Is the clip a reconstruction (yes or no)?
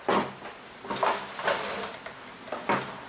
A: no